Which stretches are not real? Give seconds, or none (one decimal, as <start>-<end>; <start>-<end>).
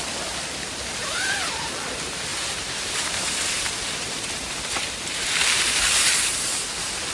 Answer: 1.0-1.7; 2.3-5.8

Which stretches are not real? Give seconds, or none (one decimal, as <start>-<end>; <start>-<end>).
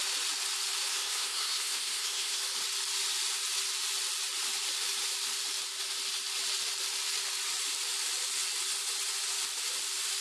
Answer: 0.9-2.4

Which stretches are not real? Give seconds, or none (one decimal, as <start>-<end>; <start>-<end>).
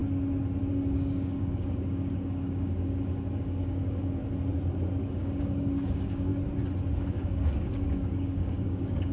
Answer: 0.7-4.2; 5.0-6.3; 7.0-9.1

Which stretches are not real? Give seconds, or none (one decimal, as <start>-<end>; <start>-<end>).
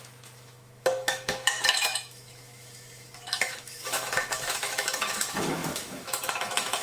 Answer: 0.0-6.8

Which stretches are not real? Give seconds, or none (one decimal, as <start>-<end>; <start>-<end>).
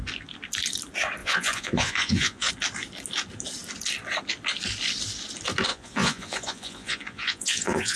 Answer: 1.2-2.5; 5.7-8.0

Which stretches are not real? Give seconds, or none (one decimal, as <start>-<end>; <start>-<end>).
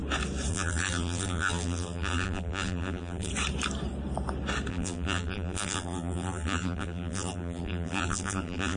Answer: 0.5-3.3; 4.7-8.8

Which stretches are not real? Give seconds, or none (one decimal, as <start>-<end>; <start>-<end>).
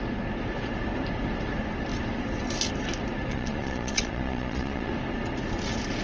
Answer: 3.3-4.9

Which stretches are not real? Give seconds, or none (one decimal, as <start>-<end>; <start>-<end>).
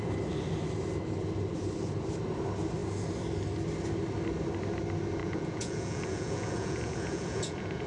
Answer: 5.2-7.9